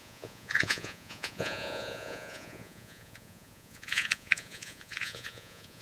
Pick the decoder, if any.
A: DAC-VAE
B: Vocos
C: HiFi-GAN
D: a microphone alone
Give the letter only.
B